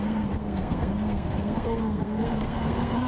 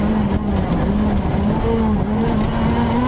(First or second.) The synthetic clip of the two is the first